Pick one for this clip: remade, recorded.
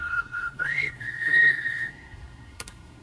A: remade